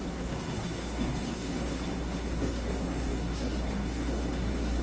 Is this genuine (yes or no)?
no